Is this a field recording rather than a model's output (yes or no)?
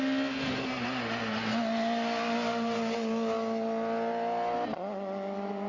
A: yes